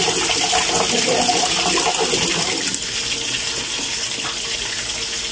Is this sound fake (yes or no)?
no